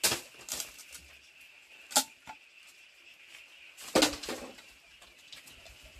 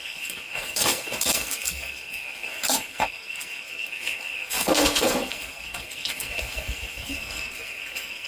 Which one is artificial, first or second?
second